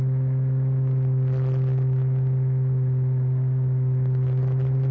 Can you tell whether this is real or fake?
real